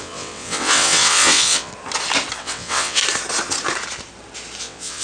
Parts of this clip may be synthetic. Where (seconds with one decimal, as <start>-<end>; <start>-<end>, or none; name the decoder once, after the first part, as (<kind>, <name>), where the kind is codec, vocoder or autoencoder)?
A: 0.0-1.7 (vocoder, WaveNeXt); 2.4-3.0; 4.6-5.0